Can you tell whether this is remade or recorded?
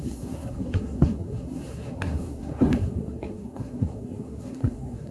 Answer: remade